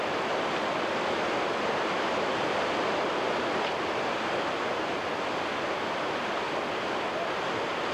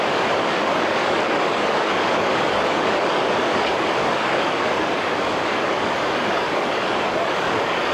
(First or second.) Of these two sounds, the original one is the first